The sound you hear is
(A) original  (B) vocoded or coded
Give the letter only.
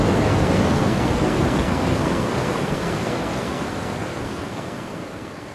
B